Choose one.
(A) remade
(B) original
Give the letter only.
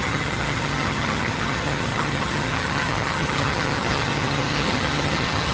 A